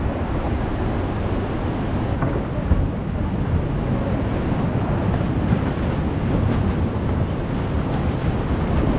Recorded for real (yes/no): yes